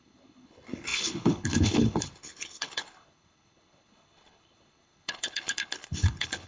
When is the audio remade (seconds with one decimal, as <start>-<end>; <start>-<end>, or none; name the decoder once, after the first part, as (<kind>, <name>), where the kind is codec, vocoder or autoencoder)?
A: 0.0-6.5 (codec, HILCodec)